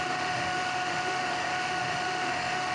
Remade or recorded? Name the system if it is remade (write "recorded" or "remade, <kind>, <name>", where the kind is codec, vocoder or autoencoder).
remade, autoencoder, DAC-VAE